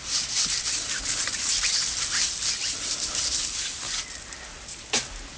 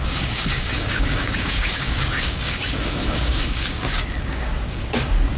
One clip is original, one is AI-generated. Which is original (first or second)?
first